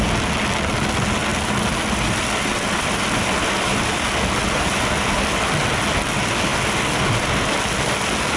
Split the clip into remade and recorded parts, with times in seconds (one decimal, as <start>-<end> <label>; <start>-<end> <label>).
0.0-1.3 recorded; 1.3-3.9 remade; 3.9-8.4 recorded